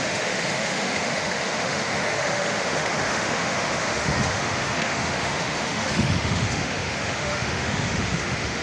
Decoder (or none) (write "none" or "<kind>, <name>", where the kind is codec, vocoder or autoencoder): autoencoder, DAC-VAE